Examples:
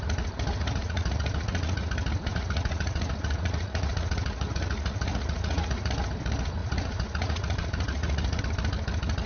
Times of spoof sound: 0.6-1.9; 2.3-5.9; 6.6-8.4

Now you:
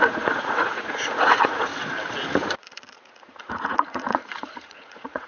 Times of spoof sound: 0.0-1.7; 2.4-5.3

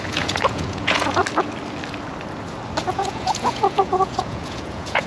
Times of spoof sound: 0.0-1.2; 2.9-5.1

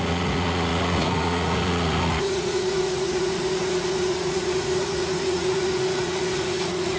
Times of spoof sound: 0.0-7.0

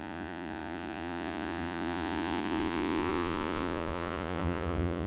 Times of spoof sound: 0.0-5.1

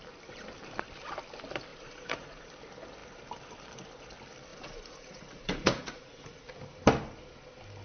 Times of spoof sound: 1.7-2.5; 4.5-6.4